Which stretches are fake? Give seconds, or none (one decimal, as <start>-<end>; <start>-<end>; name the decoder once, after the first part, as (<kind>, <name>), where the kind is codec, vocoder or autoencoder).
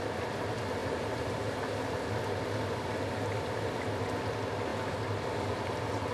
none